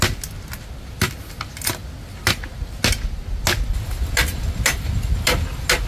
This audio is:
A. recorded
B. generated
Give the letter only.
A